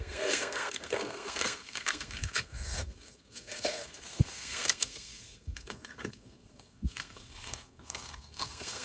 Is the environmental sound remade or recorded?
remade